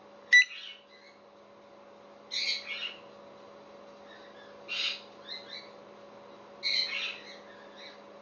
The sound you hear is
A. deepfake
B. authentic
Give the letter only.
B